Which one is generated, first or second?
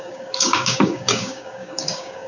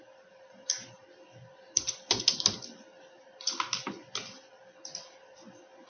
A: first